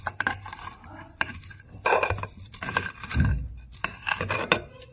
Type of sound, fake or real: fake